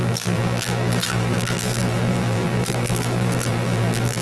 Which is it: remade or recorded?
remade